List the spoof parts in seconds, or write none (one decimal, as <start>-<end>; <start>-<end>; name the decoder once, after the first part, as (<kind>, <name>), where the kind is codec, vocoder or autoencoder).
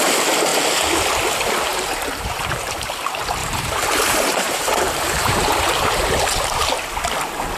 1.7-2.4 (vocoder, BigVGAN v2); 3.4-6.7